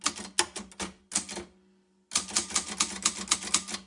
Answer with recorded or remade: recorded